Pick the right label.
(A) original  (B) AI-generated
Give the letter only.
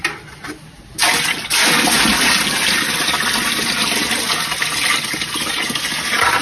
A